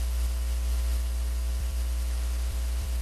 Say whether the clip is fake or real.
fake